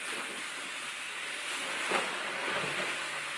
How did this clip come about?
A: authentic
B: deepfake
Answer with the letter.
A